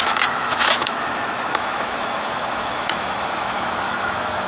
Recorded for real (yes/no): no